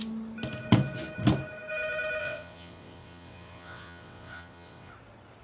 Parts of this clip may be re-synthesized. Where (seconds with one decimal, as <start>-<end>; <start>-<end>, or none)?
2.2-4.9